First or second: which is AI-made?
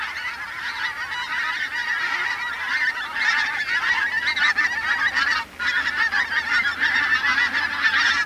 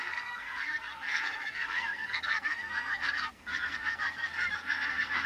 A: second